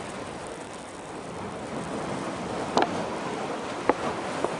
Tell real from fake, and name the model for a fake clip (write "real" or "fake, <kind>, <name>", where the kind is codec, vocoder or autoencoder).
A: fake, vocoder, BigVGAN v2